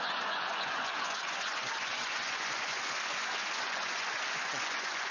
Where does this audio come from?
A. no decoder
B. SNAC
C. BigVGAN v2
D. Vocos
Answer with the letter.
D